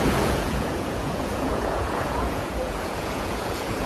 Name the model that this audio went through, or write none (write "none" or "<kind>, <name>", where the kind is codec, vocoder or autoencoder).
vocoder, Vocos